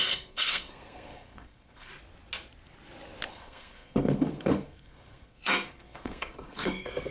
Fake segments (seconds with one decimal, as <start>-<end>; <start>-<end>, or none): 0.0-1.9; 3.3-7.1